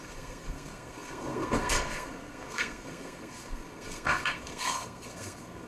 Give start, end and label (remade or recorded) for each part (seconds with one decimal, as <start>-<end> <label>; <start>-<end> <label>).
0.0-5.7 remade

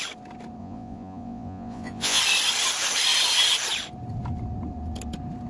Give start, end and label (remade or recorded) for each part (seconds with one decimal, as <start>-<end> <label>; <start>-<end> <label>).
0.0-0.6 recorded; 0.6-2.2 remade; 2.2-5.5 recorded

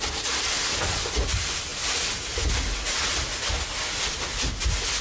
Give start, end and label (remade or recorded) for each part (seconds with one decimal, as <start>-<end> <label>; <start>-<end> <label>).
0.0-5.0 recorded